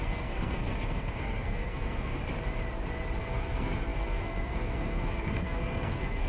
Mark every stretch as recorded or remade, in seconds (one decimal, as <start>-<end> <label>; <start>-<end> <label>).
0.0-2.2 remade; 2.2-3.2 recorded; 3.2-6.3 remade